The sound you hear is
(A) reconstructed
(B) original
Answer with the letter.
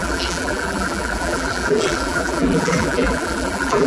A